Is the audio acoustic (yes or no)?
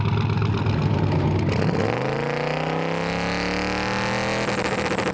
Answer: yes